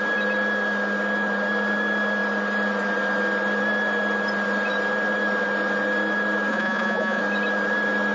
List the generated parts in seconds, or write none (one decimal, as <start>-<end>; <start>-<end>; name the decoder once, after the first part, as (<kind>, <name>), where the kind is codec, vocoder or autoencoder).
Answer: 6.5-7.2 (vocoder, Vocos)